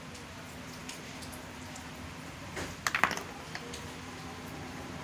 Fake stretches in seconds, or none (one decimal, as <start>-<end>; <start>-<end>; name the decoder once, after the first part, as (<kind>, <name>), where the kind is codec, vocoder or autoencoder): none